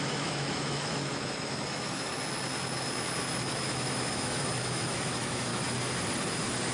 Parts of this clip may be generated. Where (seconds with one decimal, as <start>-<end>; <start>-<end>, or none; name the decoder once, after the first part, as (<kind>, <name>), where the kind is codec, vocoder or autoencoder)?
0.0-2.1 (autoencoder, DAC-VAE); 3.4-5.5